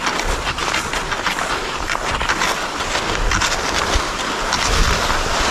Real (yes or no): yes